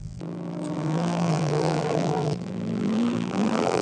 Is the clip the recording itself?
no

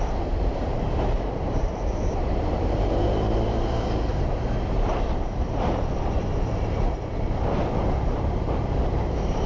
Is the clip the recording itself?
no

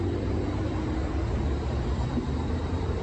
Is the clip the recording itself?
no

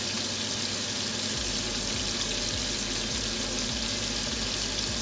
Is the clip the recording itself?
yes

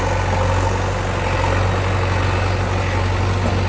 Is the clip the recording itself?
yes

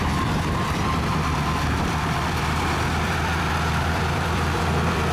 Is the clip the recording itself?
no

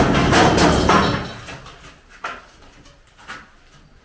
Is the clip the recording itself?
yes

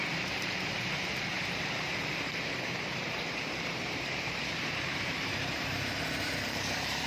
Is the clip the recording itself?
no